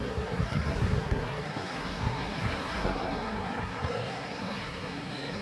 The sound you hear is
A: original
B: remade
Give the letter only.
B